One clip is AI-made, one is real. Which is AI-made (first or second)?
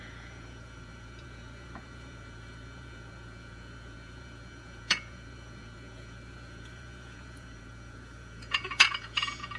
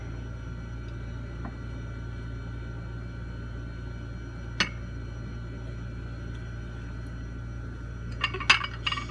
first